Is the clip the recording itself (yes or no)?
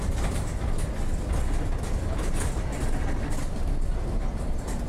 yes